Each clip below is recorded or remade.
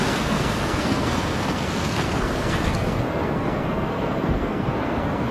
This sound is remade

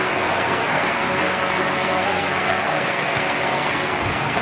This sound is remade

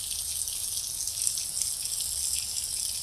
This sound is recorded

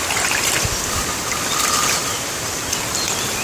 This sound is recorded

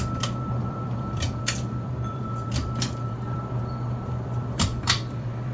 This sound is remade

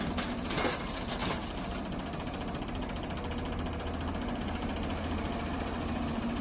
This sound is recorded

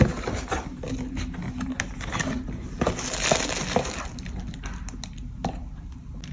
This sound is recorded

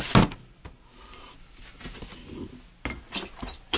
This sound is recorded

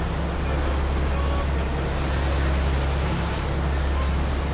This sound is recorded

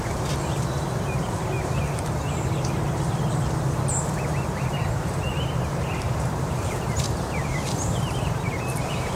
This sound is remade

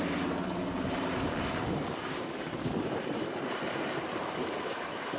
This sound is remade